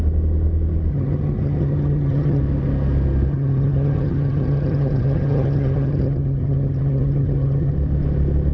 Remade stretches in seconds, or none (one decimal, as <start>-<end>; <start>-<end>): 0.9-2.4; 3.3-7.7